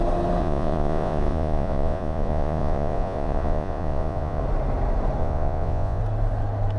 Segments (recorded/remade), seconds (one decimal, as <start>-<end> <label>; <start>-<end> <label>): 0.0-0.4 recorded; 0.4-4.4 remade; 4.4-5.2 recorded; 5.2-6.0 remade; 6.0-6.8 recorded